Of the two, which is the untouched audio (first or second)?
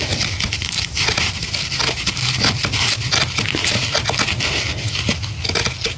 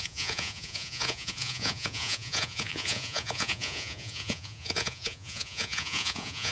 first